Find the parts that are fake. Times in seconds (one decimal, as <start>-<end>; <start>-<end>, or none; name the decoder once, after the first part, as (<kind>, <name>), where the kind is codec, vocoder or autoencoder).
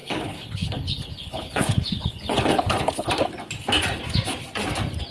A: 0.0-3.1 (codec, HILCodec)